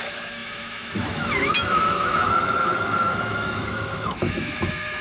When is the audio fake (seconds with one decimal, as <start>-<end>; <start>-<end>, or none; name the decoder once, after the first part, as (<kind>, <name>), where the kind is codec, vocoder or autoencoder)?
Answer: 0.0-5.0 (autoencoder, DAC-VAE)